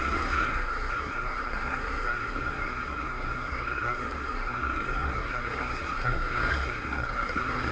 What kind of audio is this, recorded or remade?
remade